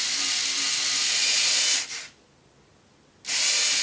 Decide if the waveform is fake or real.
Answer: real